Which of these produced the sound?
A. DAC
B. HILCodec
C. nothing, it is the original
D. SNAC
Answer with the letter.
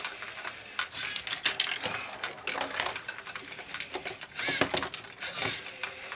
C